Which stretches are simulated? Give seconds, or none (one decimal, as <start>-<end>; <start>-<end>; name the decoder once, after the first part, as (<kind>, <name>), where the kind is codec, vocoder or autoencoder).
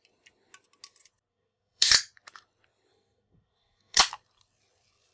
1.3-1.9 (codec, SNAC); 2.9-4.0